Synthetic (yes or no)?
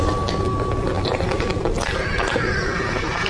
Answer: no